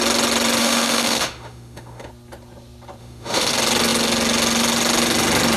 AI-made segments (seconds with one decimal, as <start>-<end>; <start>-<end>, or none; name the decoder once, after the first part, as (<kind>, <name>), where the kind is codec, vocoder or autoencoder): 0.6-2.1 (autoencoder, DAC-VAE); 3.0-3.5